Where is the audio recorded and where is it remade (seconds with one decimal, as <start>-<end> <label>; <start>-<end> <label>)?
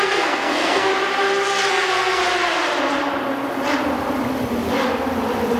0.0-0.9 remade; 0.9-1.7 recorded; 1.7-2.2 remade; 2.2-5.6 recorded